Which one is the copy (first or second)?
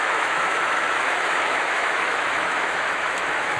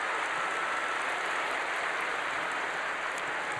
first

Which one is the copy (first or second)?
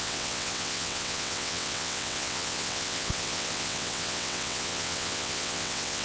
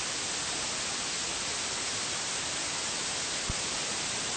first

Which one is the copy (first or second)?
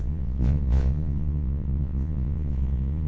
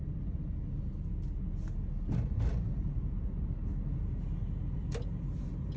first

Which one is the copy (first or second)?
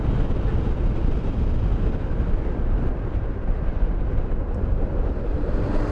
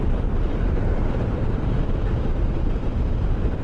second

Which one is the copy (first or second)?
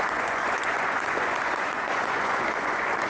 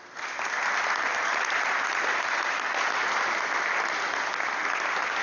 first